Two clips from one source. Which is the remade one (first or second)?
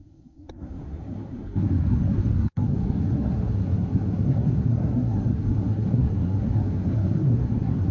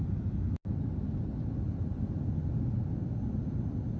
first